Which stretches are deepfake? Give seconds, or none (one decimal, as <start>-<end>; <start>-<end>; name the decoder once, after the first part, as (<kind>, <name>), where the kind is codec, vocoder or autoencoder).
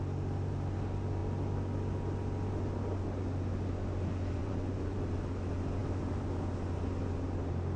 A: 4.4-5.0 (vocoder, Vocos)